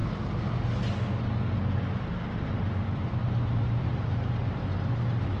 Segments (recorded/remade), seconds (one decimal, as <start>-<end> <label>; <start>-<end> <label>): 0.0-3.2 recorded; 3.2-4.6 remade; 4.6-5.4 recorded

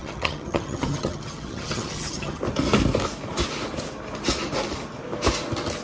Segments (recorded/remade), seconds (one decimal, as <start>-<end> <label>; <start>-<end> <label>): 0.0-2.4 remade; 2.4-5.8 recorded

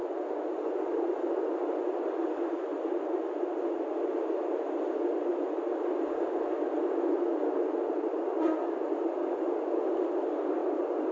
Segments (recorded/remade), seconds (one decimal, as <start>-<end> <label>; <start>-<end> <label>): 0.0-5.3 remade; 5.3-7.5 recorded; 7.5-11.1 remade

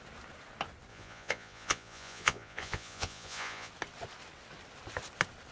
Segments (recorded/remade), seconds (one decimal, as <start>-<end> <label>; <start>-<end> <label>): 0.0-0.9 recorded; 0.9-3.7 remade; 3.7-5.5 recorded

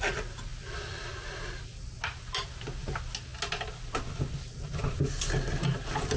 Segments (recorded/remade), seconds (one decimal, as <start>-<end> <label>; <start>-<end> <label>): 0.0-6.2 recorded

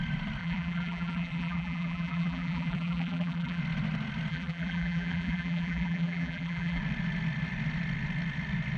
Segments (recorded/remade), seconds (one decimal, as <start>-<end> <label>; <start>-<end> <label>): 0.0-0.4 recorded; 0.4-3.6 remade; 3.6-4.3 recorded; 4.3-6.8 remade; 6.8-8.8 recorded

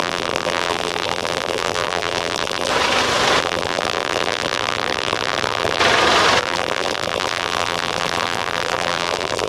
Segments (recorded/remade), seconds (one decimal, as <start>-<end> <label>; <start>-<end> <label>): 0.0-2.7 remade; 2.7-3.4 recorded; 3.4-5.8 remade; 5.8-6.4 recorded; 6.4-9.5 remade